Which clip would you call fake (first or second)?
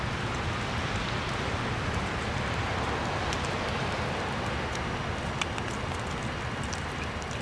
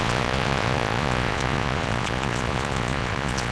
second